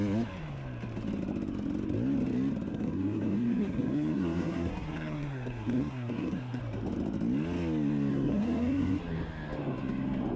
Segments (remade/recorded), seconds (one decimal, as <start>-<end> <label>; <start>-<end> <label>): 0.0-2.7 recorded; 2.7-6.6 remade; 6.6-8.1 recorded; 8.1-9.0 remade; 9.0-10.4 recorded